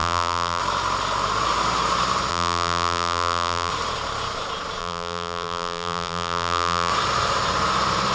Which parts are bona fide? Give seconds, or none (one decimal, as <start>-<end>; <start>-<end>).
0.6-2.3; 3.7-4.8; 6.9-8.1